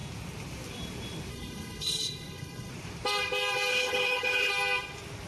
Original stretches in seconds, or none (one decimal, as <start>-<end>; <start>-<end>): 0.0-1.3; 2.7-3.7; 4.5-5.3